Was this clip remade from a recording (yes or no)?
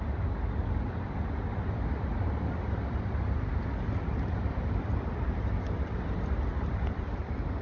no